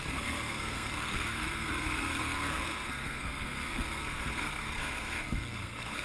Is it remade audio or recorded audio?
remade